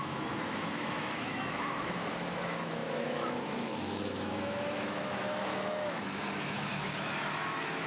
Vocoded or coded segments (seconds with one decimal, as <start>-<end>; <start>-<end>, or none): 0.0-7.9